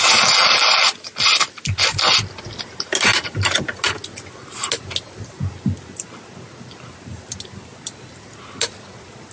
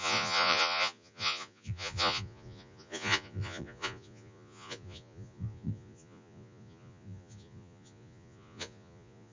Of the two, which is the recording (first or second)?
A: first